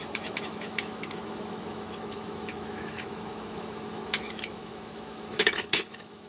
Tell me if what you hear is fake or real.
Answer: fake